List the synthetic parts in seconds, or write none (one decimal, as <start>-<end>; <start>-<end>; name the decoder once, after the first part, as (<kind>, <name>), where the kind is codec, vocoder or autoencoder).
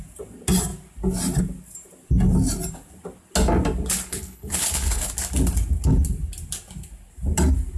4.1-5.1 (codec, HILCodec)